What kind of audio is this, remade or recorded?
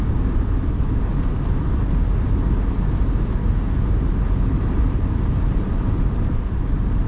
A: recorded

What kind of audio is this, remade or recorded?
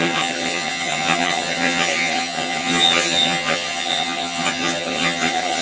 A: remade